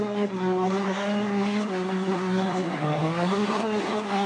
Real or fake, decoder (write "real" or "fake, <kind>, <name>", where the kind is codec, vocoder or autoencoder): fake, codec, SNAC